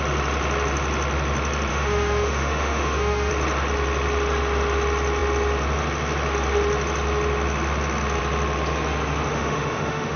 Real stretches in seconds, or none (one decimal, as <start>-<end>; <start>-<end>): 0.0-1.7; 3.3-9.3